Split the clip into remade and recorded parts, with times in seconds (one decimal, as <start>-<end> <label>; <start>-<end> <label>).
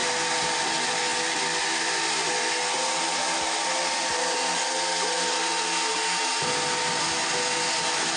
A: 0.0-8.2 recorded